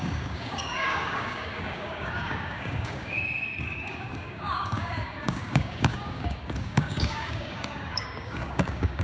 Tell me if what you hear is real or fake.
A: fake